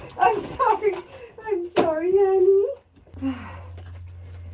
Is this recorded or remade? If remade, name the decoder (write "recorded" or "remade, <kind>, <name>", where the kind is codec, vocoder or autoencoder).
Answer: recorded